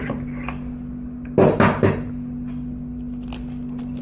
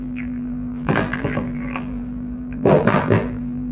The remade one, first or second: second